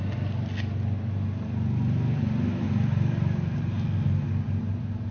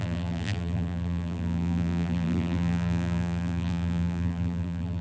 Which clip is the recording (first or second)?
first